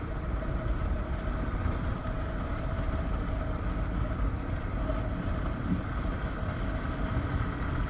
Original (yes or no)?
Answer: yes